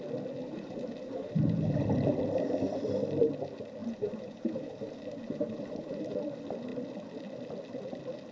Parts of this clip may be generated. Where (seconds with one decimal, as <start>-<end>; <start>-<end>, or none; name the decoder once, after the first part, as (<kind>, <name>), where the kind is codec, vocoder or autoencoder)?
0.4-1.4 (vocoder, BigVGAN v2); 3.8-6.0